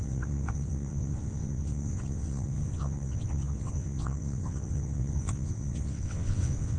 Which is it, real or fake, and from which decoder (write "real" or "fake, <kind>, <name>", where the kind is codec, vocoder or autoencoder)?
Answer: fake, vocoder, WaveNeXt